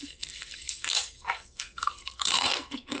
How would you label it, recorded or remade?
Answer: remade